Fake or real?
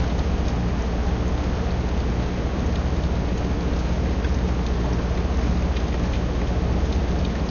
real